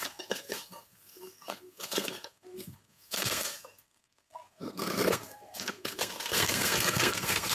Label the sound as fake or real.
fake